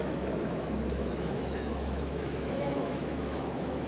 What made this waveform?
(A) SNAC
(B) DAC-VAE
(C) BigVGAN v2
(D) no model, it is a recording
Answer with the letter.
B